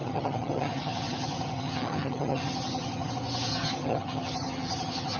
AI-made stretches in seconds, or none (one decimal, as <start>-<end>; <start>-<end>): 0.0-3.1; 3.5-5.2